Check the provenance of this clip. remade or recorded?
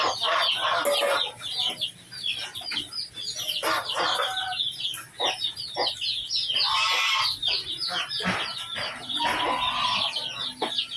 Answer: recorded